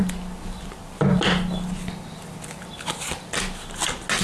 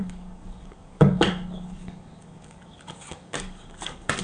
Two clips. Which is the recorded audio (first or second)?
first